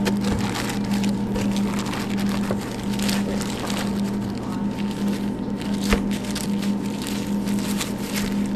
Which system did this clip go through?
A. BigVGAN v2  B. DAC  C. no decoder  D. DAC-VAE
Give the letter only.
C